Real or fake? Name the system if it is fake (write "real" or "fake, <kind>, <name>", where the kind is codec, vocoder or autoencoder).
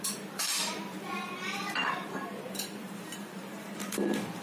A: fake, vocoder, BigVGAN v2